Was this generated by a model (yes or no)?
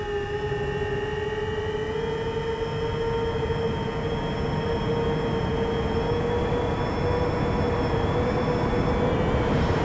no